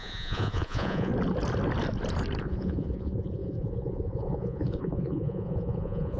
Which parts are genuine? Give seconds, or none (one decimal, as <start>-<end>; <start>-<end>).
1.1-2.4